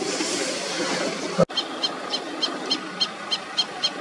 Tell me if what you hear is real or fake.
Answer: real